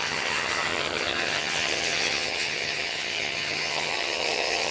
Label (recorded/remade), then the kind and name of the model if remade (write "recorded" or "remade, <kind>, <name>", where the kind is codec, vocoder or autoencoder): remade, vocoder, HiFi-GAN